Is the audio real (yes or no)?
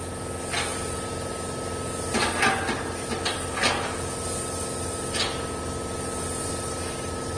yes